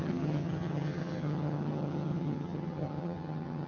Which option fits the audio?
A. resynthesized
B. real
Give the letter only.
A